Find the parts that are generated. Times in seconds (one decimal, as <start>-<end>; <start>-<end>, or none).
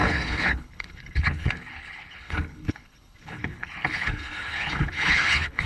0.0-5.7